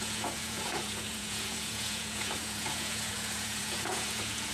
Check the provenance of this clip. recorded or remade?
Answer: remade